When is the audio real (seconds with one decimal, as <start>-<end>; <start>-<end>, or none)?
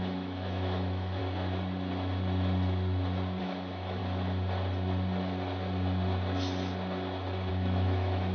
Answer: 1.2-3.4; 4.0-7.5